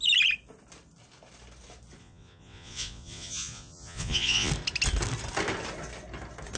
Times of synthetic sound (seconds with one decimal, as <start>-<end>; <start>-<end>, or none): 2.0-4.5